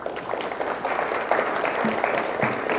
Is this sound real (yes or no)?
yes